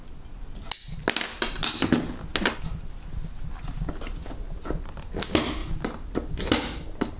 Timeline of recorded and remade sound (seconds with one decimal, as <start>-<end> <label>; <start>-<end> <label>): 0.0-7.2 recorded